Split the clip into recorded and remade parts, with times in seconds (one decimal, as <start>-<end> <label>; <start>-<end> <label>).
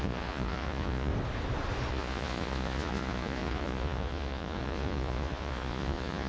0.0-1.1 remade; 1.1-1.9 recorded; 1.9-6.3 remade